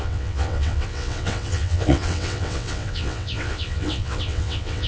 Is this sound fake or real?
fake